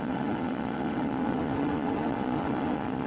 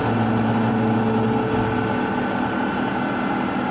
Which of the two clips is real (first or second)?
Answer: second